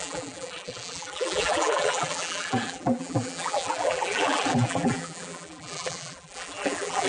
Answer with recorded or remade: remade